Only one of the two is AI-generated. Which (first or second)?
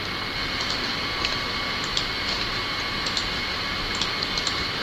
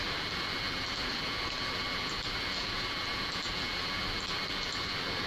second